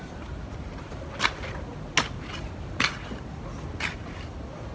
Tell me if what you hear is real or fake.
real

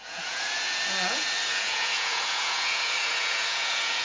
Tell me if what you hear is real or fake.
fake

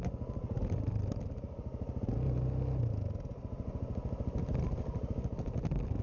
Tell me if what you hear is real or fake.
real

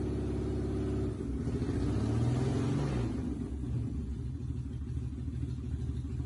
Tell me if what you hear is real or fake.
real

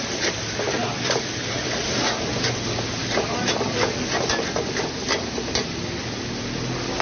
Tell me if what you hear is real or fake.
real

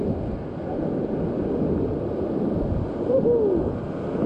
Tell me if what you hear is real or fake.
real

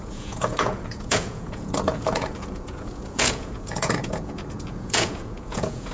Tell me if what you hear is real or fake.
fake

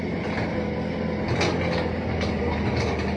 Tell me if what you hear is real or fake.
real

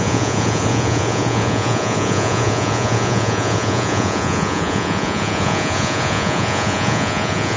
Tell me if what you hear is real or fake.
fake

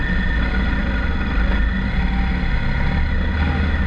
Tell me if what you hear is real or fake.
real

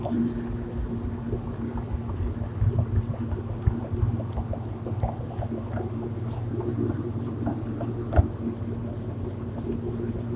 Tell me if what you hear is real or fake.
real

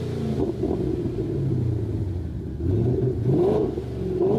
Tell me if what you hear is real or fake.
real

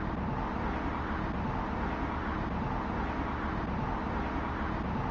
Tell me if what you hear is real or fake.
real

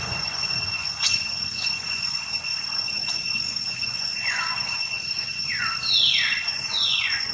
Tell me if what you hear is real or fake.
fake